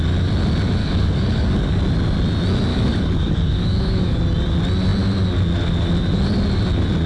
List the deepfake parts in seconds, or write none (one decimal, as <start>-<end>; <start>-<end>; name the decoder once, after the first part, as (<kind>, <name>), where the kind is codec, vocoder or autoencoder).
0.8-1.8 (codec, DAC); 2.7-4.2